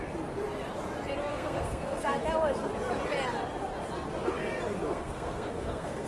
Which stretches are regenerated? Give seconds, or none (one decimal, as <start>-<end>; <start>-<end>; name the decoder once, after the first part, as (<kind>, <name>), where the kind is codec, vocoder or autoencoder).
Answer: 1.3-2.2 (codec, SNAC); 4.9-6.1